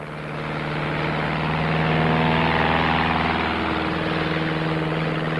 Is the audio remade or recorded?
recorded